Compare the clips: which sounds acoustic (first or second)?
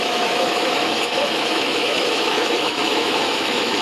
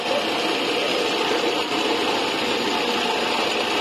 second